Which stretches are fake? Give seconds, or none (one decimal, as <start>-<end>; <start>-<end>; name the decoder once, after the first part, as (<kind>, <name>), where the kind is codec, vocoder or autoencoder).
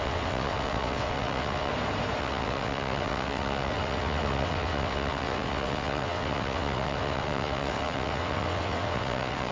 0.0-1.7 (vocoder, WaveNeXt); 2.2-9.5